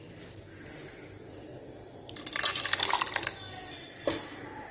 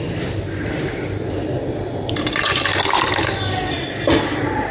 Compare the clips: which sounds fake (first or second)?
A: second